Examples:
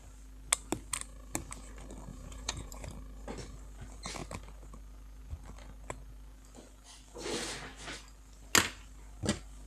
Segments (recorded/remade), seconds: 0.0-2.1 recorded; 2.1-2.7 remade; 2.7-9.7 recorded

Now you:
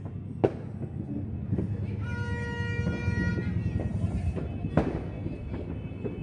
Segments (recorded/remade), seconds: 0.0-6.2 recorded

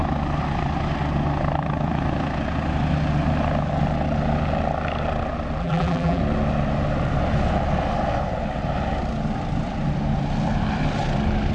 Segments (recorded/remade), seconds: 0.0-5.6 recorded; 5.6-6.2 remade; 6.2-11.5 recorded

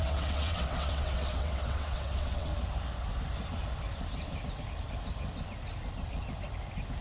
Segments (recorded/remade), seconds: 0.0-2.5 remade; 2.5-7.0 recorded